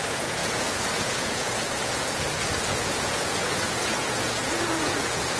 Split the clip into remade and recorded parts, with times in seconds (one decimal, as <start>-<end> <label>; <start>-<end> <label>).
0.0-5.4 remade